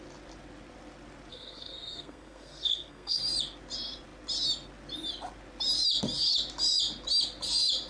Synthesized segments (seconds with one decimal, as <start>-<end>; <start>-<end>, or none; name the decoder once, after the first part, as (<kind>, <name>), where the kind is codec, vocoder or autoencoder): 1.3-3.2 (codec, SNAC)